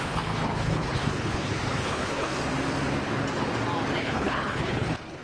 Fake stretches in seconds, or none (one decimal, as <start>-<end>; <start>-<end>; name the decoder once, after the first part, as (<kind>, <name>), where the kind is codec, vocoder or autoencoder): 0.0-2.3 (codec, HILCodec); 4.0-5.2